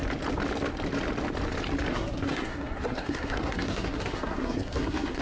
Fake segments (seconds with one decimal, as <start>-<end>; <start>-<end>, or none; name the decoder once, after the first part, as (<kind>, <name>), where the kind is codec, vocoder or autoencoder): 1.9-5.2 (codec, SNAC)